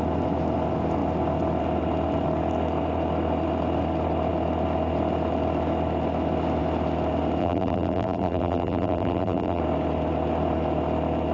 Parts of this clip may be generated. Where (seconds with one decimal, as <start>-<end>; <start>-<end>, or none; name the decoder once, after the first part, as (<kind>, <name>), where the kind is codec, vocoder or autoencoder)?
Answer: 7.4-9.6 (vocoder, BigVGAN v2)